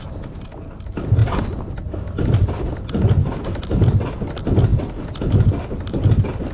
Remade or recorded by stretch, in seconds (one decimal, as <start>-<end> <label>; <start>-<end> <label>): 0.0-6.5 recorded